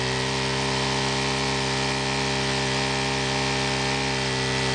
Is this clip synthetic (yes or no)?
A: no